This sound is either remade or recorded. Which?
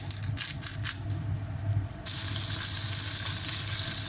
recorded